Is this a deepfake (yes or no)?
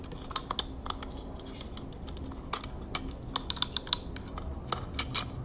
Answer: no